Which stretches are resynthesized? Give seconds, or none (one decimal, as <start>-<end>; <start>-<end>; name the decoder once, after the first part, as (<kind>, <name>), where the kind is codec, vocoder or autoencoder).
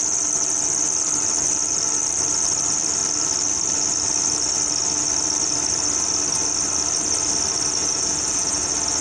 7.8-8.6 (vocoder, Vocos)